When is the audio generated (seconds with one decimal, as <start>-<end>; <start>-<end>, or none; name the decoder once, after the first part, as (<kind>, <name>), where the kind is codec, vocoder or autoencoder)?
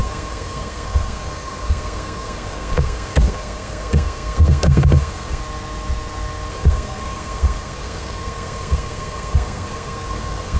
0.0-5.4 (codec, SNAC); 6.5-10.6